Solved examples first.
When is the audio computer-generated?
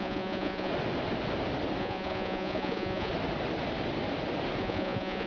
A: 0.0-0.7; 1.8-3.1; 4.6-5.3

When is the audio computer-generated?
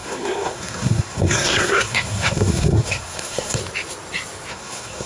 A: 0.0-3.6; 4.5-5.1